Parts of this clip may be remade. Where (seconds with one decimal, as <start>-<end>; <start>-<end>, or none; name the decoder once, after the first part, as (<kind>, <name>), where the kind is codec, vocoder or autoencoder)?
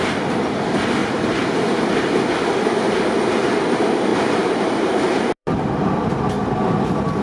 1.0-2.1 (vocoder, BigVGAN v2); 4.1-6.1